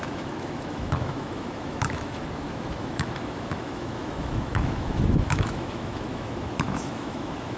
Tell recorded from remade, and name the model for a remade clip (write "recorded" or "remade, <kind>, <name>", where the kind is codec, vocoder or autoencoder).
remade, autoencoder, DAC-VAE